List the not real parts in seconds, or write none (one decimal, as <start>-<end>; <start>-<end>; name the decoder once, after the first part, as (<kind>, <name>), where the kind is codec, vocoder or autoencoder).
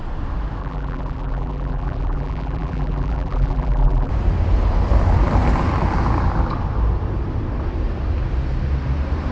0.6-4.1 (vocoder, BigVGAN v2)